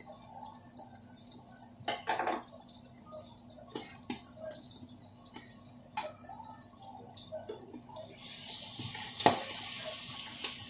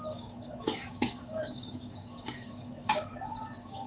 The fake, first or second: second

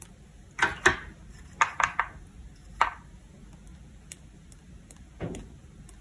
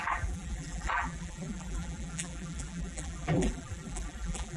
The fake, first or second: second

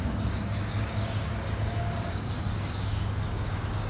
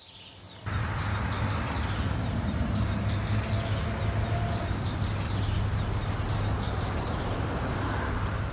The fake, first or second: first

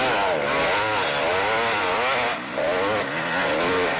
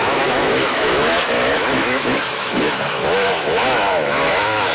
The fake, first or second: second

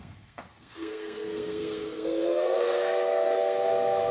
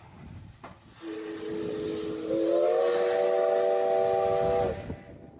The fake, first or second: first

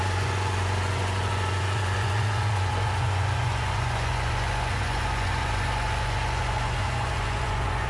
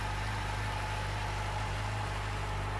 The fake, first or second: first